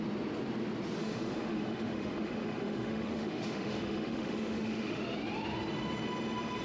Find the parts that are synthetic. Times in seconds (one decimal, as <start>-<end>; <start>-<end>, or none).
1.0-5.0